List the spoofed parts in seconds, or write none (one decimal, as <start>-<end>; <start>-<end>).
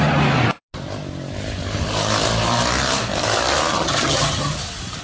3.7-4.5